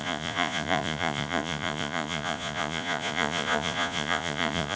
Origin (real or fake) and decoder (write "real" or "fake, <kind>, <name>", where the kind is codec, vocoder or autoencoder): fake, vocoder, Vocos